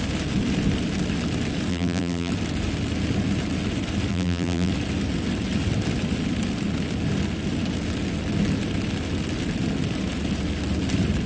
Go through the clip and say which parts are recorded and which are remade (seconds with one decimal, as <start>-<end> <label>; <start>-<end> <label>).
0.0-1.7 recorded; 1.7-2.3 remade; 2.3-4.1 recorded; 4.1-4.7 remade; 4.7-11.3 recorded

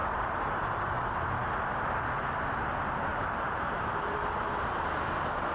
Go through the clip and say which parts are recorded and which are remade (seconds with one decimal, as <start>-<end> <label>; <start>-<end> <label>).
0.0-0.9 remade; 0.9-1.4 recorded; 1.4-2.2 remade; 2.2-3.1 recorded; 3.1-4.4 remade; 4.4-5.5 recorded

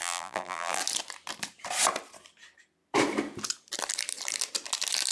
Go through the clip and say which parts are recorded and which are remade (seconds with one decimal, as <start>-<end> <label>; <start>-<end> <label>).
0.0-0.8 remade; 0.8-5.1 recorded

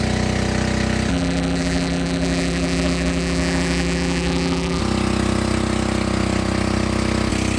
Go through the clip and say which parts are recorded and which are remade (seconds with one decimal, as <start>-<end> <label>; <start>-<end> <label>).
0.0-1.1 recorded; 1.1-4.8 remade; 4.8-7.6 recorded

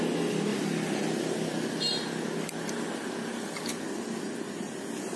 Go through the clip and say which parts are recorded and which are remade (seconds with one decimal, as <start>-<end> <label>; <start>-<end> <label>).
0.0-5.2 recorded

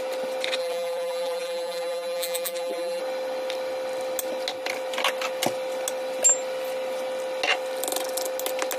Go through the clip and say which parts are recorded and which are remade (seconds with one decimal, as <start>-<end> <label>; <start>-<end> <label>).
0.0-0.6 recorded; 0.6-3.0 remade; 3.0-8.8 recorded

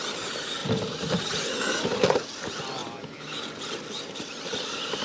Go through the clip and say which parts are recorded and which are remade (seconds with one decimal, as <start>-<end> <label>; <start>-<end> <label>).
0.0-0.6 remade; 0.6-1.6 recorded; 1.6-2.8 remade; 2.8-4.3 recorded; 4.3-5.0 remade